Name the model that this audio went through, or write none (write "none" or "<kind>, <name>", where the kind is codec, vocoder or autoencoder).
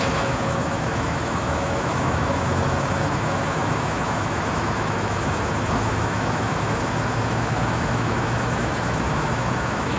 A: autoencoder, DAC-VAE